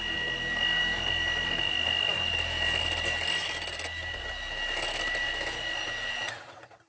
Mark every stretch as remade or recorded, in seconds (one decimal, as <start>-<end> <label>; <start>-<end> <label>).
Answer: 0.0-6.9 recorded